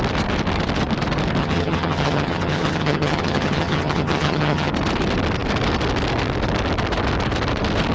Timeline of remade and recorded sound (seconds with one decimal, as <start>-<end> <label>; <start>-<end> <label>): 0.0-1.4 recorded; 1.4-4.7 remade; 4.7-7.9 recorded